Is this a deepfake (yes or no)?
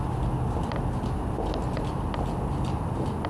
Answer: no